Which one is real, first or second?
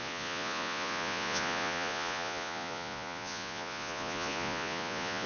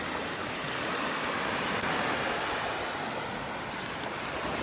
second